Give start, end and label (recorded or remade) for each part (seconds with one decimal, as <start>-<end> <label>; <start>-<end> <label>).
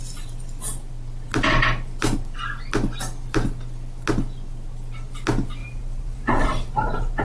0.0-5.6 recorded; 5.6-7.2 remade